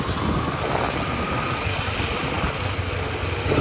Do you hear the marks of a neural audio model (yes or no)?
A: no